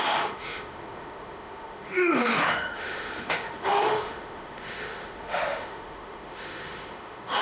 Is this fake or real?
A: fake